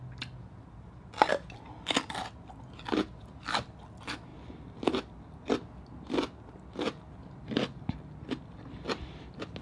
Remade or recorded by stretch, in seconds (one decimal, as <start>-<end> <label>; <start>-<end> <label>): 0.0-9.6 recorded